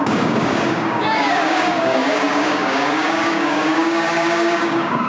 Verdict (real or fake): fake